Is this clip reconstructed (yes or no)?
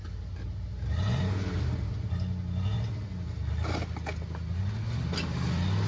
no